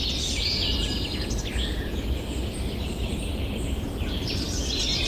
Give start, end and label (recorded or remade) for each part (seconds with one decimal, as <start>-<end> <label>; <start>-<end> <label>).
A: 0.0-5.1 recorded